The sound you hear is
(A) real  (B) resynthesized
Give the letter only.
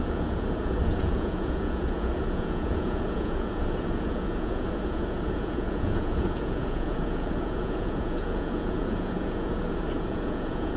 B